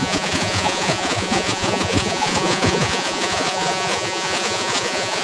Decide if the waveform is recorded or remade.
remade